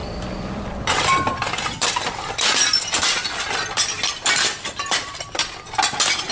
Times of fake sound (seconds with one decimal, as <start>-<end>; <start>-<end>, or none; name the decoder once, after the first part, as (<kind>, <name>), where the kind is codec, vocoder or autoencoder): 0.0-6.3 (vocoder, BigVGAN v2)